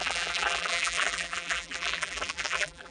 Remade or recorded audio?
remade